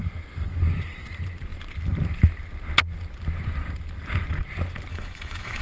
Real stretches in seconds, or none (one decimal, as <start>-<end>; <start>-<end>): 0.0-4.9